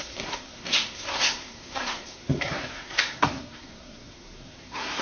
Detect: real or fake fake